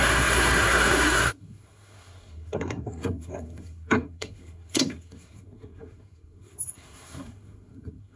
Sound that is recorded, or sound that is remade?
remade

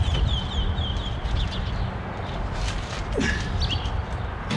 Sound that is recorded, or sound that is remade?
recorded